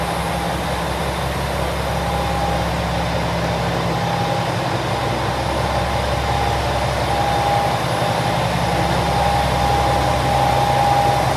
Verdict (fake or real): real